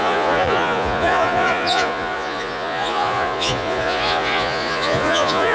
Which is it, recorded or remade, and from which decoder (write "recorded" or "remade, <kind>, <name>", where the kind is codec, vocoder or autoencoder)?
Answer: remade, vocoder, Vocos